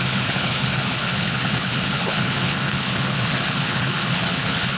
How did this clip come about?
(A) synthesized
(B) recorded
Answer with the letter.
A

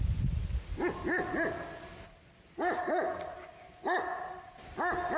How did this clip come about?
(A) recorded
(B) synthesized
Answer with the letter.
A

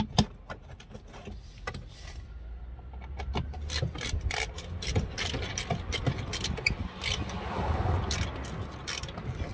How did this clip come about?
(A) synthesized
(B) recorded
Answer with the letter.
B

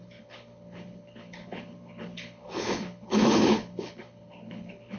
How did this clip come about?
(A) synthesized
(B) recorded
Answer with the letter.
A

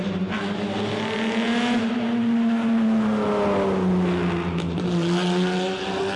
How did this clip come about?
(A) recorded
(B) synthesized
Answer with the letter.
A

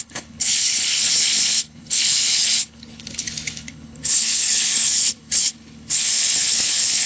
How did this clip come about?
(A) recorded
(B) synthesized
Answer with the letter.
B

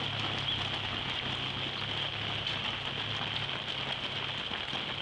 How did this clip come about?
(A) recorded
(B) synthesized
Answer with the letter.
A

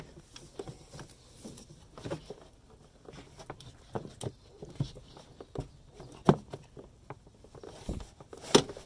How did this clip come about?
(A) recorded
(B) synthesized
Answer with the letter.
A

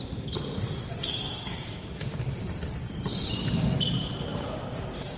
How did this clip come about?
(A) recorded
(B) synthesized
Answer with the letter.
A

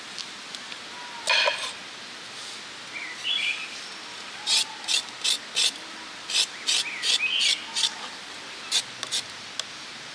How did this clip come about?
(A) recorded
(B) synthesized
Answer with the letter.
A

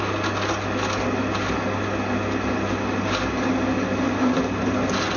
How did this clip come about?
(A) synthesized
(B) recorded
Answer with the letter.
B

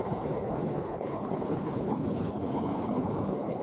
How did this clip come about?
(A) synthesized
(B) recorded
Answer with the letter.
A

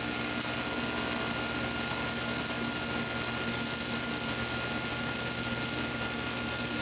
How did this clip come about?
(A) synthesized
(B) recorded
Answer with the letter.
B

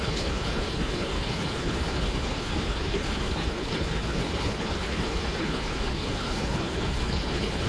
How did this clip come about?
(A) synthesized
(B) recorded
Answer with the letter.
A